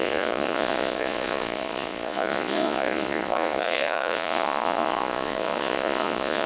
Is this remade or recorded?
remade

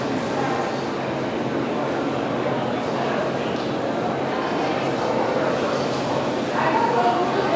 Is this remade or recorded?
recorded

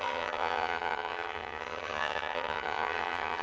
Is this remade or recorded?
remade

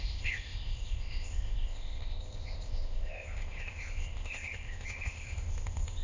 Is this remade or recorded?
remade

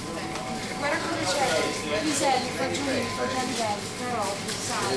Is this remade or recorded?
recorded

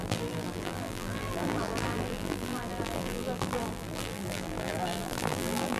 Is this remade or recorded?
remade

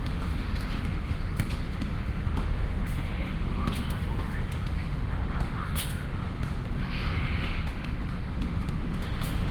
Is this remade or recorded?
remade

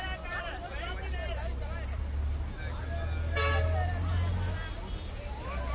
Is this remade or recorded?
recorded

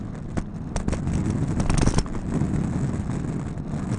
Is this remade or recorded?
recorded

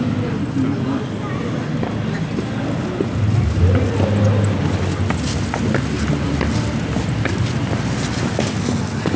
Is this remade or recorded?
recorded